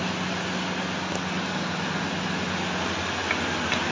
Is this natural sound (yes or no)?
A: yes